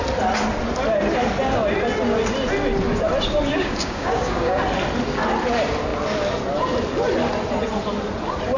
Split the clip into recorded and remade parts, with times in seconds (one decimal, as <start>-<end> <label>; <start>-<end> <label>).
0.0-3.5 recorded; 3.5-4.6 remade; 4.6-8.6 recorded